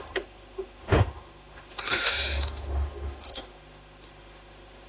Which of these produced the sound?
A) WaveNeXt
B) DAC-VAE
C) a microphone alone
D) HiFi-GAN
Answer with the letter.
B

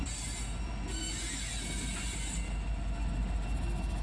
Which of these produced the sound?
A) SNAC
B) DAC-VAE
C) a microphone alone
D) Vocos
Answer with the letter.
C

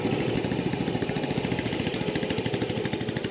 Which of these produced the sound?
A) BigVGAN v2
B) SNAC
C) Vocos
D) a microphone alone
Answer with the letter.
D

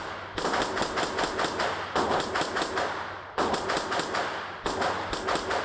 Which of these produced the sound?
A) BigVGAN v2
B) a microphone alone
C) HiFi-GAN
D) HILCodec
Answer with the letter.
B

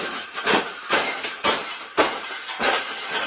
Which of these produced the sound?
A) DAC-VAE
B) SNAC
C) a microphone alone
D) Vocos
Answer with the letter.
C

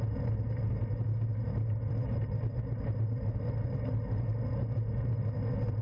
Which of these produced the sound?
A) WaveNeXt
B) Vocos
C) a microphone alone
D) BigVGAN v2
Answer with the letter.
C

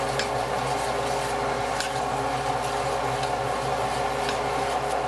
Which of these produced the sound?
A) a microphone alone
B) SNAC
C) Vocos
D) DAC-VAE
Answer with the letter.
A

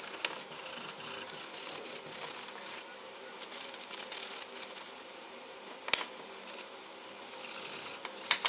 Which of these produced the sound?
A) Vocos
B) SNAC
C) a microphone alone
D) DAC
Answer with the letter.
C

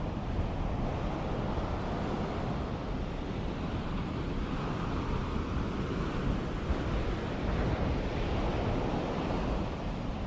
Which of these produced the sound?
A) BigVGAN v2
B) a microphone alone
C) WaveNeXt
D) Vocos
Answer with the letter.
B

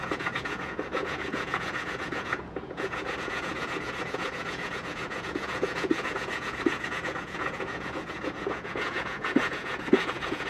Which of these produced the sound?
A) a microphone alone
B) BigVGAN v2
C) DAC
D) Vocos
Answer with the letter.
D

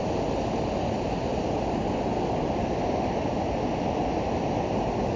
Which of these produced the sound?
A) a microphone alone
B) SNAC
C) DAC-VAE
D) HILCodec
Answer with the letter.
A